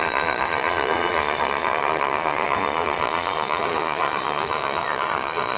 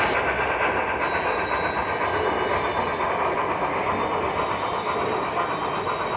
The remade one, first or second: first